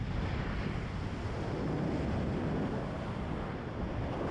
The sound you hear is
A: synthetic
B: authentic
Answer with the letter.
B